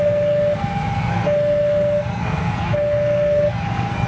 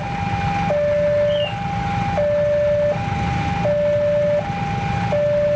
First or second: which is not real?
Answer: first